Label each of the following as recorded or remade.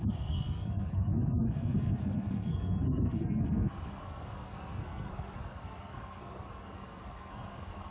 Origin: remade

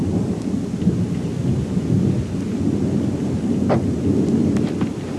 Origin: recorded